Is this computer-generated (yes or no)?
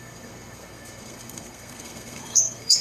yes